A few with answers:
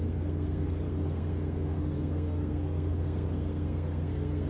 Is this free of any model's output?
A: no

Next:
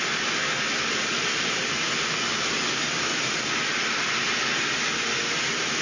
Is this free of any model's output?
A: yes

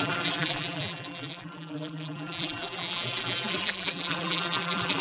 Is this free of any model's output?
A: no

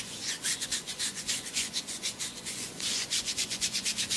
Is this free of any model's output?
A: no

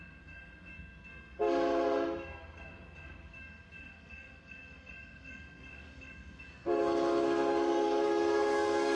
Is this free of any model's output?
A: no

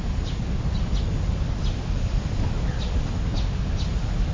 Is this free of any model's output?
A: yes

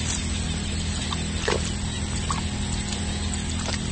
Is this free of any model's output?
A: yes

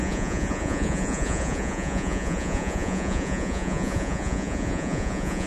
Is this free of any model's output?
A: no